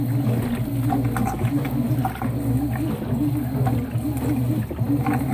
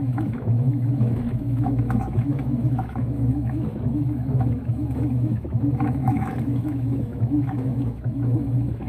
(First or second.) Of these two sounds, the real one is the first